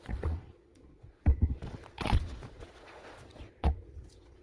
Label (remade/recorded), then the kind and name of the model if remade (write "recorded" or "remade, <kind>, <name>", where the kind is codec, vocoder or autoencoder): remade, vocoder, Vocos